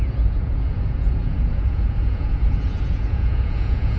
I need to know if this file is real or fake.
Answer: fake